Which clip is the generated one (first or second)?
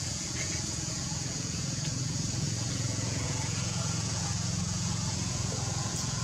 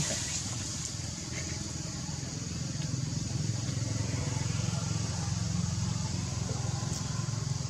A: first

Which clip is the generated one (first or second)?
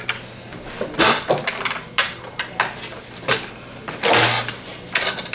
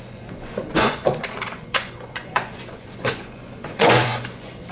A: second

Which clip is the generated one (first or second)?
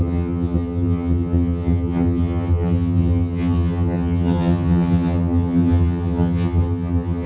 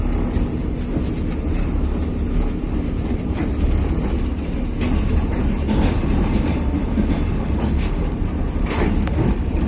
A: first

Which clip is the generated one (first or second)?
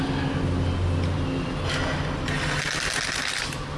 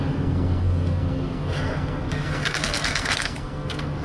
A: second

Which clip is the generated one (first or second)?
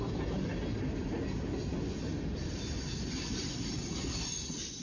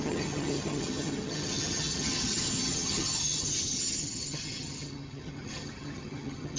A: second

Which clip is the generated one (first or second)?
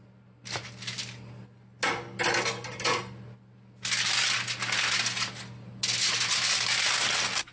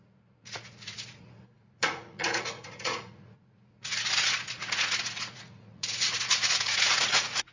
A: second